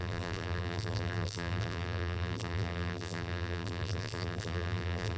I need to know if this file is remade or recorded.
remade